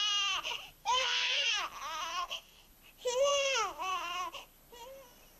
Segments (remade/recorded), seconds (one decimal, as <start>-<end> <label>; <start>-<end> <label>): 0.0-0.8 recorded; 0.8-1.6 remade; 1.6-2.1 recorded; 2.1-2.7 remade; 2.7-5.4 recorded